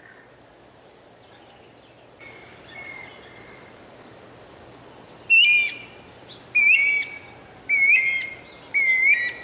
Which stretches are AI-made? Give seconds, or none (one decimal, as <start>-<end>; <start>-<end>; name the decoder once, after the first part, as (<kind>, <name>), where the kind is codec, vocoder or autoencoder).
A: none